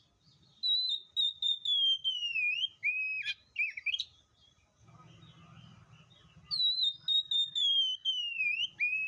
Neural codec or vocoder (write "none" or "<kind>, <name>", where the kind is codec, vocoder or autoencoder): none